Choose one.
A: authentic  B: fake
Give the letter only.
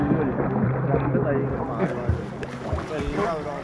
A